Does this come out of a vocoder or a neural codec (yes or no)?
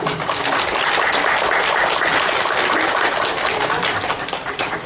no